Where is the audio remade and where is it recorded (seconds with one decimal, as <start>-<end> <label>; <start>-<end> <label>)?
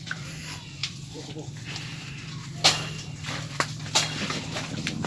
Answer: 0.0-0.8 recorded; 0.8-1.3 remade; 1.3-5.1 recorded